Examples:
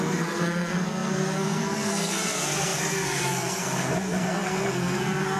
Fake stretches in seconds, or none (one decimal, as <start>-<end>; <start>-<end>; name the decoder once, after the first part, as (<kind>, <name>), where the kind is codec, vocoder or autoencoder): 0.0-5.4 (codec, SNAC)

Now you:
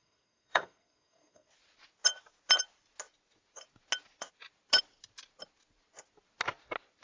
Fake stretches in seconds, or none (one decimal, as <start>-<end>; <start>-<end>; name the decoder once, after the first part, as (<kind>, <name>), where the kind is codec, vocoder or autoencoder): 0.0-1.5 (codec, SNAC)

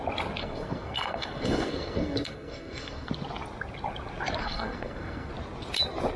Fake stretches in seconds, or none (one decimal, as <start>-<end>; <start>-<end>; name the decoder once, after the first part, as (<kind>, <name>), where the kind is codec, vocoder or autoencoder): 0.4-3.1 (codec, SNAC); 4.4-5.3

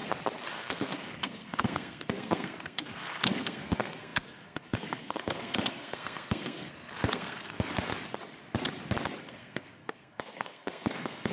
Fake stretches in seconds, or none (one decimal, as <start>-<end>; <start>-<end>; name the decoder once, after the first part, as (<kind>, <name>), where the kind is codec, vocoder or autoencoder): 0.5-7.9 (codec, SNAC); 9.2-11.3